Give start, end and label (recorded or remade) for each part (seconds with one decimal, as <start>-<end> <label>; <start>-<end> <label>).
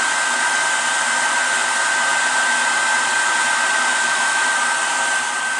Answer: 0.0-3.9 recorded; 3.9-4.5 remade; 4.5-5.6 recorded